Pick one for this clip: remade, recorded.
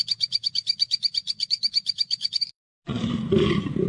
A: remade